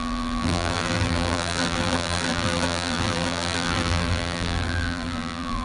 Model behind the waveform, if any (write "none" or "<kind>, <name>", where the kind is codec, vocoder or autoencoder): vocoder, BigVGAN v2